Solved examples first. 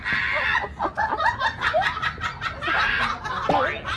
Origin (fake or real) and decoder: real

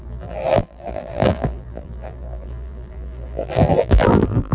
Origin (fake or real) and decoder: fake, vocoder, BigVGAN v2